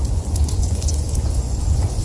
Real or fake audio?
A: fake